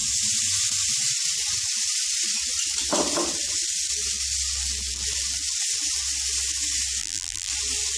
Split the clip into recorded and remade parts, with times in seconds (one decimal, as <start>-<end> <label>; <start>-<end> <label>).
0.0-7.0 recorded; 7.0-7.5 remade; 7.5-8.0 recorded